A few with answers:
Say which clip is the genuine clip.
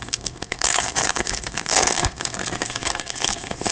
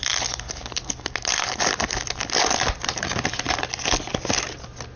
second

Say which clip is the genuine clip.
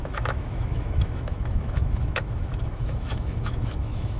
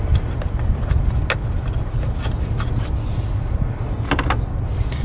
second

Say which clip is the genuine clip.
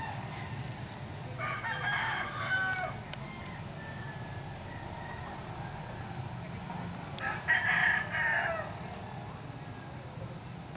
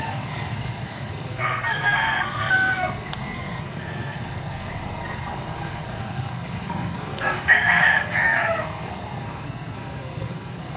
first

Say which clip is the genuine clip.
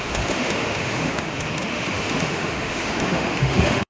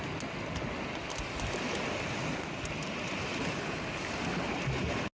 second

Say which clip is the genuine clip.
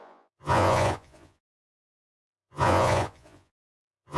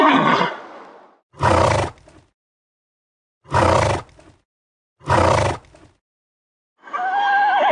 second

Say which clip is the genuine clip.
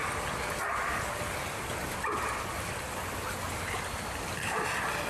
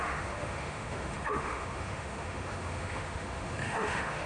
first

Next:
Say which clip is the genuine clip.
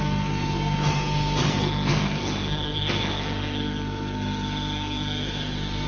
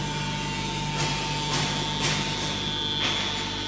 second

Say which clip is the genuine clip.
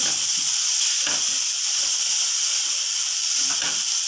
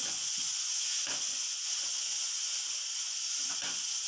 first